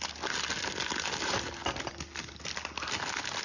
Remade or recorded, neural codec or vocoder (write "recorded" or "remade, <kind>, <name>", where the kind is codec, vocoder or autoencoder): recorded